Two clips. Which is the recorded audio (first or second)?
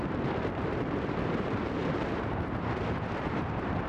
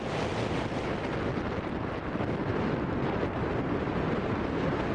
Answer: second